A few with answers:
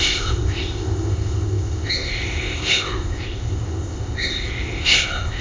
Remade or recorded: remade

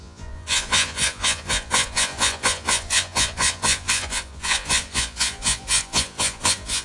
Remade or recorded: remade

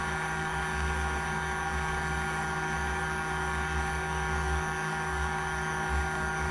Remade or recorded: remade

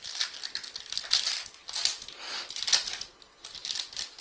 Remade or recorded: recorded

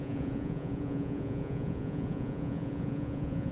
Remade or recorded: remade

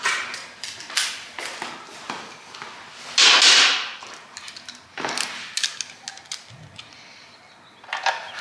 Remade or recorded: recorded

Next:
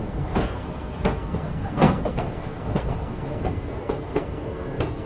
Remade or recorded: remade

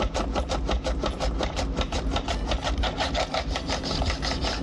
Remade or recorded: recorded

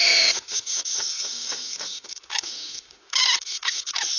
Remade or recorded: remade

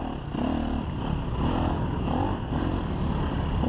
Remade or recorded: recorded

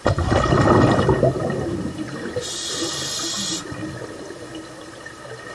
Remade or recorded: recorded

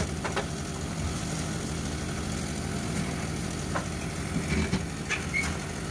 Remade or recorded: recorded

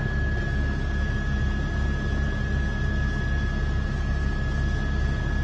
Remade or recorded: recorded